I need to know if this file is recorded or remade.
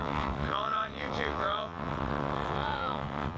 remade